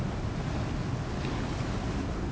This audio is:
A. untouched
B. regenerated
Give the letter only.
A